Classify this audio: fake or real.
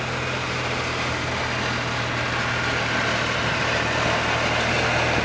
real